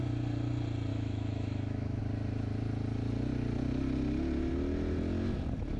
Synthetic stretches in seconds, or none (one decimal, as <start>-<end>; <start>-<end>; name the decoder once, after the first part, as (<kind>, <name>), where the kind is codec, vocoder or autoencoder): 0.9-2.0 (autoencoder, DAC-VAE)